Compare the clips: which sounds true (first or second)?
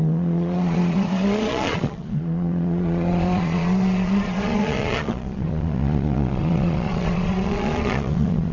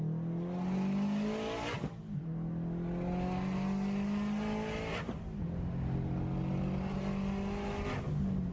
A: second